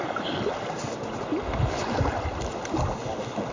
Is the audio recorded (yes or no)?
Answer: yes